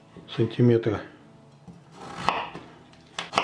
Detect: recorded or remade recorded